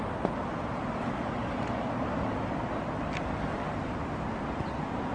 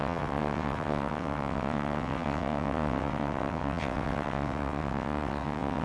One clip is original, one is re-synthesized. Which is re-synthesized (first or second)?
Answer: second